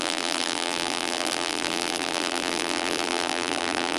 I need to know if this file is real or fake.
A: fake